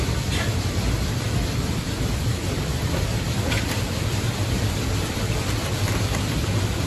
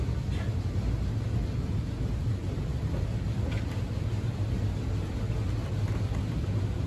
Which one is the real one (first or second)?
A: second